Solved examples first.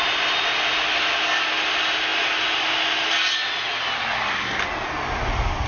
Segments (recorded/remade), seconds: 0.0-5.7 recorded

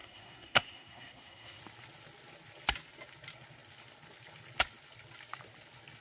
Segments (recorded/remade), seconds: 0.0-1.6 remade; 1.6-6.0 recorded

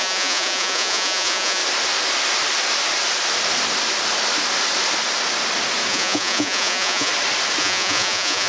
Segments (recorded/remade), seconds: 0.0-1.6 remade; 1.6-5.9 recorded; 5.9-7.1 remade; 7.1-7.6 recorded; 7.6-8.5 remade

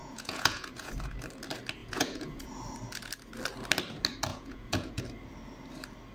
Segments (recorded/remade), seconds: 0.0-0.9 remade; 0.9-1.8 recorded; 1.8-2.5 remade; 2.5-4.3 recorded; 4.3-5.0 remade; 5.0-6.1 recorded

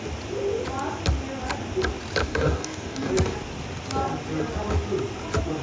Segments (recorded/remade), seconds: 0.0-2.2 recorded; 2.2-3.1 remade; 3.1-5.6 recorded